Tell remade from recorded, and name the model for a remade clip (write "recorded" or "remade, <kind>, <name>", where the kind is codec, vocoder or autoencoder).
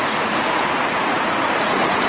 remade, vocoder, Vocos